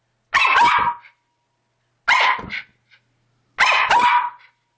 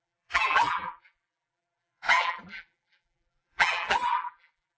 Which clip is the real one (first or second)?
first